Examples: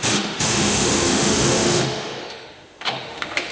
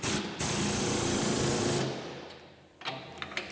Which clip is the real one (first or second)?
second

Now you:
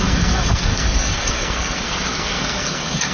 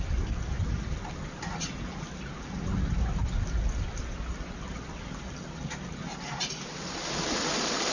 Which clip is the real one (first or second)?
second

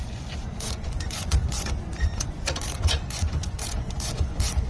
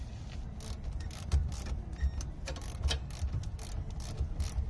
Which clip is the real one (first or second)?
second